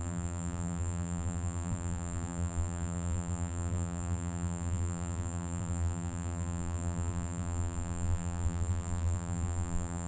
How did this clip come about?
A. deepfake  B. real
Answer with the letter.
A